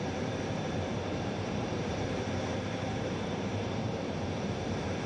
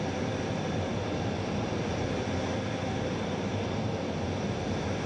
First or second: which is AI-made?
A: first